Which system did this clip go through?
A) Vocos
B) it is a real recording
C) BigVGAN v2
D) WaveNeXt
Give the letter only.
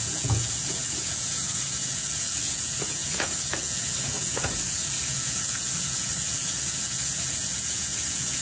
A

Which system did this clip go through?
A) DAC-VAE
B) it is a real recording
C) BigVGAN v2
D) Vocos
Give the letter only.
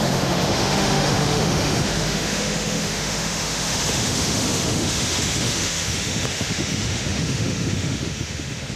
A